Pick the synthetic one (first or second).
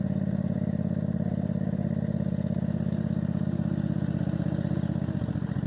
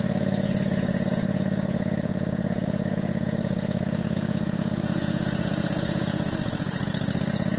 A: second